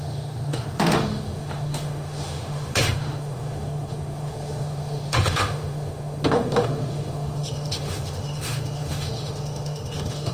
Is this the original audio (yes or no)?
no